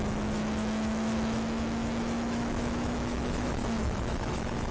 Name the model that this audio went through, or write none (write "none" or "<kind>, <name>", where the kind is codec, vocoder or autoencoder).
autoencoder, DAC-VAE